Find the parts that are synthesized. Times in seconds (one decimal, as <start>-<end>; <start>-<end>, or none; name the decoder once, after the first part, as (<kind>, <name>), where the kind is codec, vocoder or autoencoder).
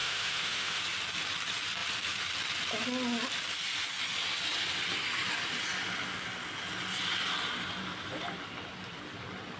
0.0-0.8 (autoencoder, DAC-VAE)